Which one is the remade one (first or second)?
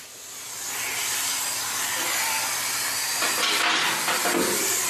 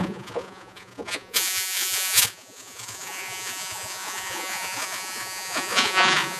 second